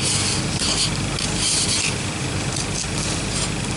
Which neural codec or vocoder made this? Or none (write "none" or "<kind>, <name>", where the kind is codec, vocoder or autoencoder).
none